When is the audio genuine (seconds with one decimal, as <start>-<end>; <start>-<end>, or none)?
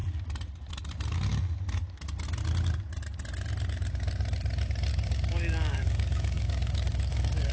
0.0-4.9